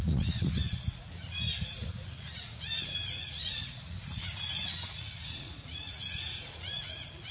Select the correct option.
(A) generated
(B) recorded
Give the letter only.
A